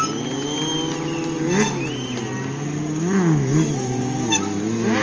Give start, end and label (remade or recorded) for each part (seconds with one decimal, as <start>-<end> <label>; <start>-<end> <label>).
0.0-5.0 recorded